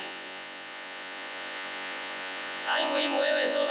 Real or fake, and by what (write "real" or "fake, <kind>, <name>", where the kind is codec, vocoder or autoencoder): fake, vocoder, Vocos